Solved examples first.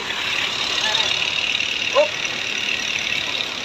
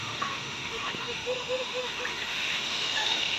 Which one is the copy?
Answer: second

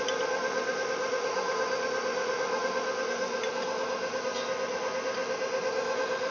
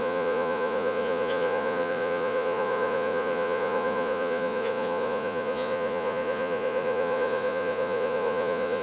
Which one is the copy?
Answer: second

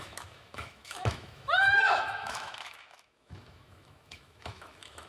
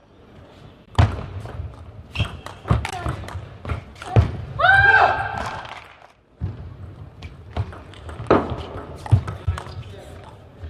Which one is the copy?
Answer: first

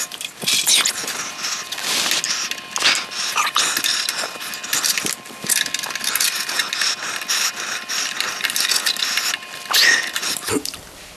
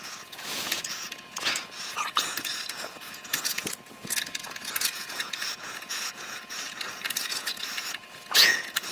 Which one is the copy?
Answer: second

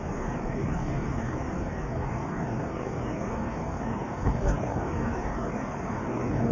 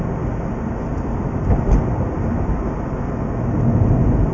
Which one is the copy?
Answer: first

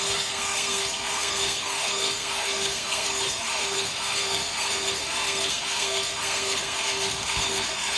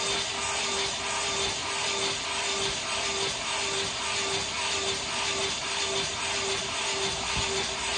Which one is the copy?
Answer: first